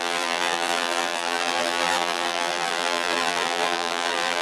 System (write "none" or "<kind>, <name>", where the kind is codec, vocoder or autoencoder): vocoder, BigVGAN v2